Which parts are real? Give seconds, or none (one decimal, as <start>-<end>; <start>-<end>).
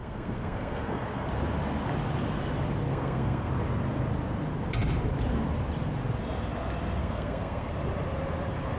1.3-2.9; 3.5-7.0; 7.7-8.8